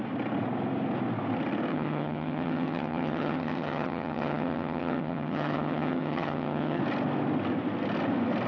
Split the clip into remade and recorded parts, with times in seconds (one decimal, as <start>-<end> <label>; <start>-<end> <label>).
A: 0.0-1.7 recorded; 1.7-6.8 remade; 6.8-8.5 recorded